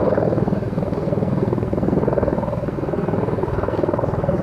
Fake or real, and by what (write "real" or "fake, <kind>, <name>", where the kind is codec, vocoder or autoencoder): fake, codec, SNAC